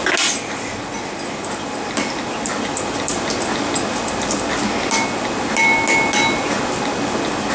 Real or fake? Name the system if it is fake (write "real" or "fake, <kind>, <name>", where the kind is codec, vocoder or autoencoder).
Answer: real